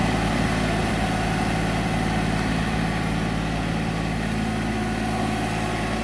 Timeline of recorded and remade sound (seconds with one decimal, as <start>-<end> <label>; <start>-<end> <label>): 0.0-6.0 recorded